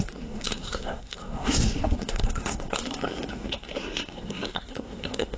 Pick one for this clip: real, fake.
fake